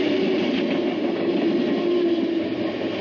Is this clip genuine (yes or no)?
yes